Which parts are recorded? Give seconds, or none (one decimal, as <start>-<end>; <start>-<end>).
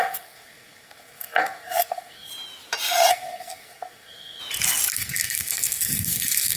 2.3-3.1; 4.4-4.9